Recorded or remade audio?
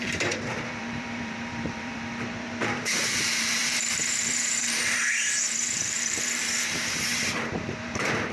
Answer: remade